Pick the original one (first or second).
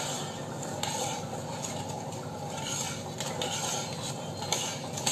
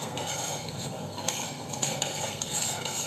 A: first